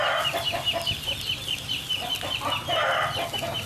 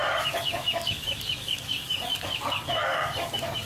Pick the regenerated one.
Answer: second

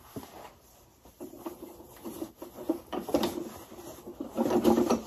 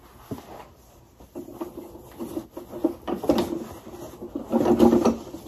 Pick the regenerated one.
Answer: first